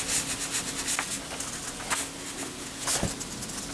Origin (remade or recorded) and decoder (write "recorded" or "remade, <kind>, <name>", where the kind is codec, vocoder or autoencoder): recorded